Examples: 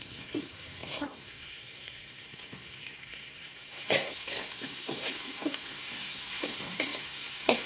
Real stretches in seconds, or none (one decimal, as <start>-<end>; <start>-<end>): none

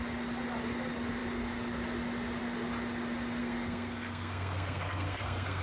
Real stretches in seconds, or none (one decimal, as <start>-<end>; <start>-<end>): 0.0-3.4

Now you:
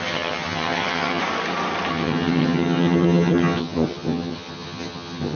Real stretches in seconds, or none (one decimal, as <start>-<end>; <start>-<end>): 1.2-1.9

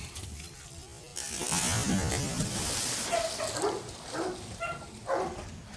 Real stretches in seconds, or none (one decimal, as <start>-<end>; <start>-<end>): 0.0-5.8

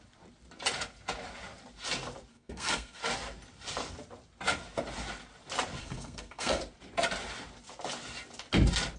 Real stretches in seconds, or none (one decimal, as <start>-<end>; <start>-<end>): 0.0-2.3; 3.0-5.8; 6.6-9.0

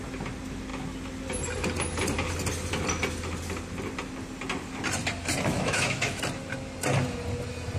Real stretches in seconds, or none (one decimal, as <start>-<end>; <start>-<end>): 0.0-5.5; 6.2-7.8